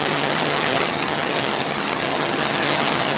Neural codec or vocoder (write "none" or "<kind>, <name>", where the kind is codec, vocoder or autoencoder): vocoder, HiFi-GAN